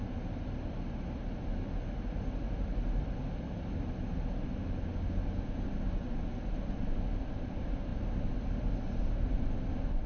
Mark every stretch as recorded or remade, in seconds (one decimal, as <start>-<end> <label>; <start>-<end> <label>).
0.0-10.1 recorded